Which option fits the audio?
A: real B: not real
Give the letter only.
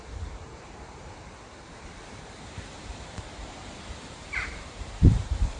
B